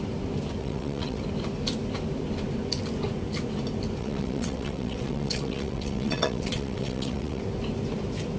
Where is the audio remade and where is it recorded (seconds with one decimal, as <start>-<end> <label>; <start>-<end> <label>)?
0.0-0.6 recorded; 0.6-1.2 remade; 1.2-4.0 recorded; 4.0-7.4 remade; 7.4-8.4 recorded

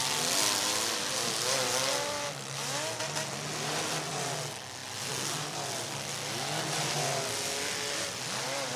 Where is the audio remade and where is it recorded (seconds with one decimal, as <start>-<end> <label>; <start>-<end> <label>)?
0.0-8.8 recorded

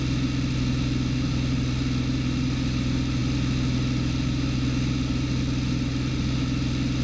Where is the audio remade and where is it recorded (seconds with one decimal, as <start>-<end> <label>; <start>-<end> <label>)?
0.0-7.0 recorded

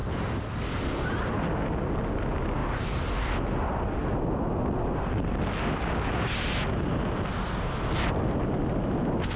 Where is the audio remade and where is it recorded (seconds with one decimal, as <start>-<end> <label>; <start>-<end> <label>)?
0.0-9.4 recorded

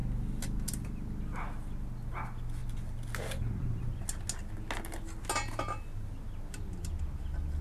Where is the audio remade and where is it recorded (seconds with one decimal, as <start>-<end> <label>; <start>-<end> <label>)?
0.0-7.6 recorded

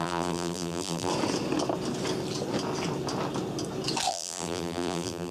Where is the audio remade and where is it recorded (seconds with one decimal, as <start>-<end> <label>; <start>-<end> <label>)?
0.0-1.1 remade; 1.1-4.1 recorded; 4.1-5.3 remade

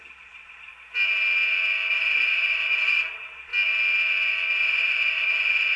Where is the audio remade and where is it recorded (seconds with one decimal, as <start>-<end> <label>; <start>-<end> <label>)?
0.0-0.7 remade; 0.7-1.9 recorded; 1.9-3.5 remade; 3.5-4.6 recorded; 4.6-5.8 remade

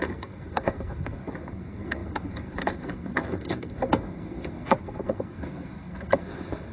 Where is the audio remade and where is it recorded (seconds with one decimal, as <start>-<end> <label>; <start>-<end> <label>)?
0.0-6.7 remade